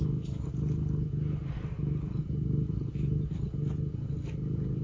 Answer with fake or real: real